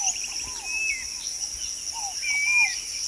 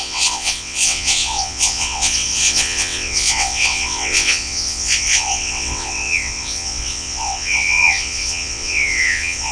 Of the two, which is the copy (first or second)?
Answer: second